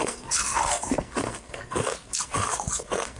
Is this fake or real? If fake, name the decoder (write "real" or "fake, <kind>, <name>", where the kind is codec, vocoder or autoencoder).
fake, codec, SNAC